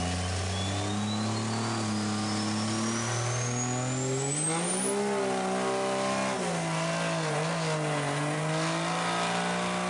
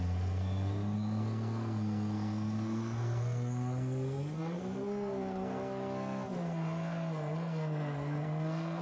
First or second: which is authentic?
first